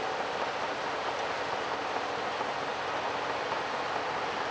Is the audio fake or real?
real